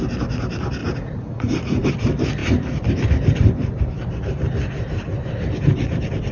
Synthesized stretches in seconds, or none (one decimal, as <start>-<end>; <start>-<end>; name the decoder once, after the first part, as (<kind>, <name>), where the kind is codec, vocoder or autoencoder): 0.8-1.9 (vocoder, Vocos)